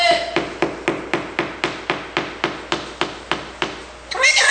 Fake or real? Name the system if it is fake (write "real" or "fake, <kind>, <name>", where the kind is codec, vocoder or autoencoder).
real